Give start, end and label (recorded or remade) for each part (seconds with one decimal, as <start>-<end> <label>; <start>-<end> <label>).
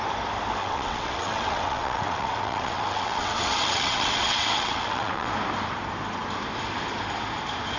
0.0-0.6 recorded; 0.6-5.3 remade; 5.3-7.8 recorded